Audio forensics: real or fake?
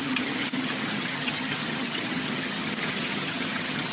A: fake